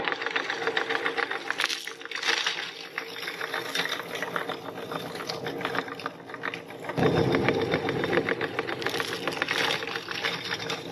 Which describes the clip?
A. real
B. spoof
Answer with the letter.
A